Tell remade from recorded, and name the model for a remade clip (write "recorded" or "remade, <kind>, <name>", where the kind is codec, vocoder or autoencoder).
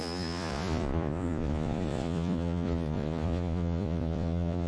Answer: remade, vocoder, Vocos